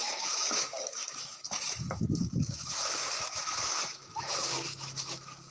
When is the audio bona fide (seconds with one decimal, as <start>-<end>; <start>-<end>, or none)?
none